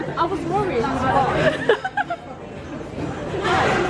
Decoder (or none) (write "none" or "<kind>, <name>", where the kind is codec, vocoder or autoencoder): none